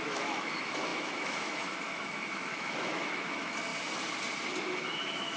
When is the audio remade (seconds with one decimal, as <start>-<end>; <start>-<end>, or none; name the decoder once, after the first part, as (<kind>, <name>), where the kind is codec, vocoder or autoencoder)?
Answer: 0.0-3.7 (autoencoder, DAC-VAE); 4.6-5.4